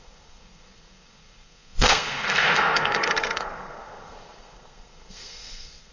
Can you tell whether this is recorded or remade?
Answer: remade